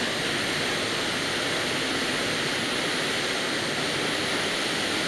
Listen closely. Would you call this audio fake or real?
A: real